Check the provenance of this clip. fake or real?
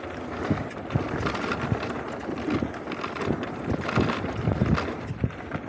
real